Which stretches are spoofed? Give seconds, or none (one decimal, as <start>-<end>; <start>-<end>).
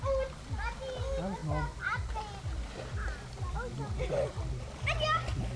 none